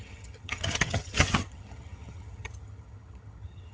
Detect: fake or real fake